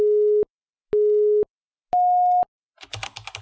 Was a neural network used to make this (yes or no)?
no